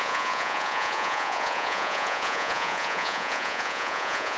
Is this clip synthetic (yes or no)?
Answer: yes